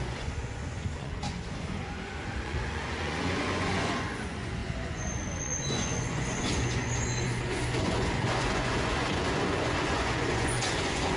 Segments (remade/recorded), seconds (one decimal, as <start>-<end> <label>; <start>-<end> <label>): 0.0-11.2 remade